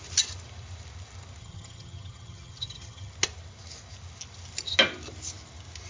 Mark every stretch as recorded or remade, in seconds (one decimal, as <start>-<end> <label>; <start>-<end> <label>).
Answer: 0.0-1.4 recorded; 1.4-3.1 remade; 3.1-5.9 recorded